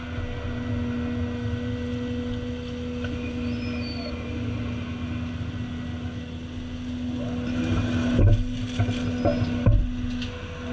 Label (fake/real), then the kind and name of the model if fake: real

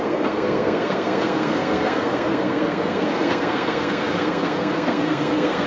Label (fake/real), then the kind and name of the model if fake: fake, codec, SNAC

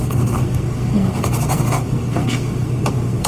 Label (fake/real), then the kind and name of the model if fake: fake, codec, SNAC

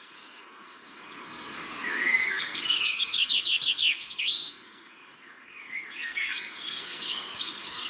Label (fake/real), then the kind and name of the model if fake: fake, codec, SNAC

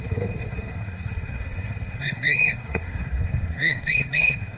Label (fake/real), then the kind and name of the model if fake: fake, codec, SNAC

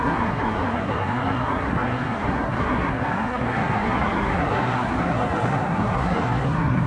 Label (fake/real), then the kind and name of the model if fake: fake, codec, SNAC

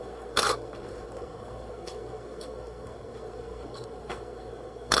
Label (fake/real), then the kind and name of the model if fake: fake, codec, SNAC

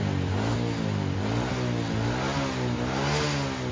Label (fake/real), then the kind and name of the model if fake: real